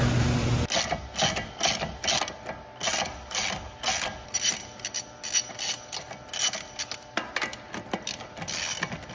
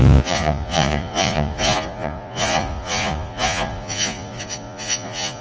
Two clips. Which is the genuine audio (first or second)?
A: first